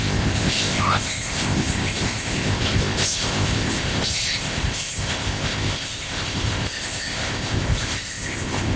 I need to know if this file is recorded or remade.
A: remade